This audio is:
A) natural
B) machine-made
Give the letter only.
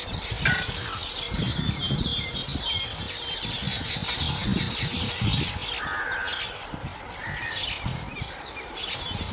A